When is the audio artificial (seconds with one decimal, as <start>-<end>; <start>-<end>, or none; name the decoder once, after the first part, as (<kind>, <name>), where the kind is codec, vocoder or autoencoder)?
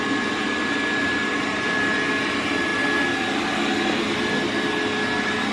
none